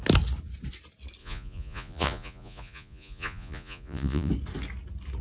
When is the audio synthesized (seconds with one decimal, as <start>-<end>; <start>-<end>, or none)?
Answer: 1.2-4.3